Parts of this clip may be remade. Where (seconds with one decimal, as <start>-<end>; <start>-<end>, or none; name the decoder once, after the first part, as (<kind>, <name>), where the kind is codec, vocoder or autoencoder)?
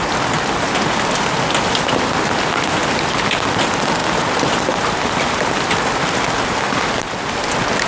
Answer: none